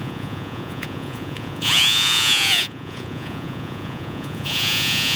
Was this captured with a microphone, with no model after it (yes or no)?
no